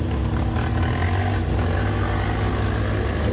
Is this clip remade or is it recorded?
recorded